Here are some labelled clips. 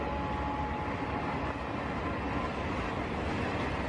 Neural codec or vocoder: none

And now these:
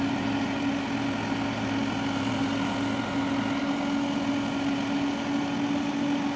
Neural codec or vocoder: none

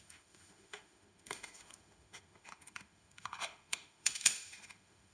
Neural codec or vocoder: autoencoder, DAC-VAE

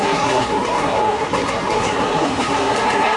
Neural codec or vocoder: codec, SNAC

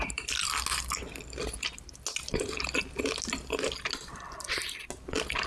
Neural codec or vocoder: none